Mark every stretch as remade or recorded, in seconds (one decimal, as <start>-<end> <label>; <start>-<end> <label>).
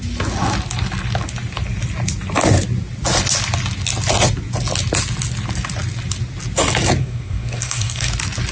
0.0-7.0 recorded; 7.0-8.1 remade; 8.1-8.5 recorded